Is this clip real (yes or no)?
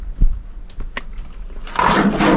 yes